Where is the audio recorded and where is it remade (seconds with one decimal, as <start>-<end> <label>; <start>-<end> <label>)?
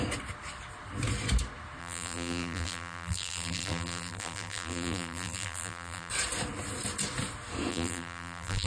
0.0-1.8 recorded; 1.8-6.1 remade; 6.1-7.7 recorded; 7.7-8.7 remade